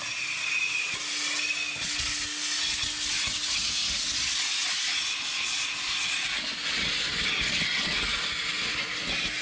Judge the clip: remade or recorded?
recorded